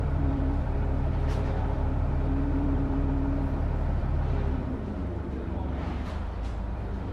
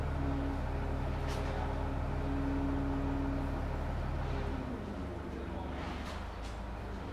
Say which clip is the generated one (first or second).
first